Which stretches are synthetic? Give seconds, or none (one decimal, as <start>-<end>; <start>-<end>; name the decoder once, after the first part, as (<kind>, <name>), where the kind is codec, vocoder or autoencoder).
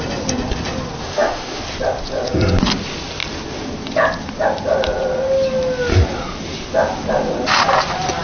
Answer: 1.0-1.6 (autoencoder, DAC-VAE)